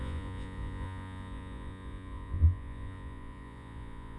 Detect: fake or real fake